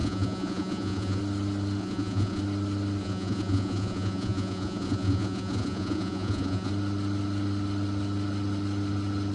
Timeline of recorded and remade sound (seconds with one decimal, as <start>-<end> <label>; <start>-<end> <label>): 0.0-1.2 remade; 1.2-1.8 recorded; 1.8-2.4 remade; 2.4-3.0 recorded; 3.0-6.7 remade; 6.7-9.3 recorded